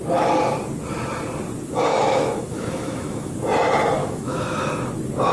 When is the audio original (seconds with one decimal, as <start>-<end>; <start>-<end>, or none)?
0.0-1.9; 3.3-4.0; 4.7-5.3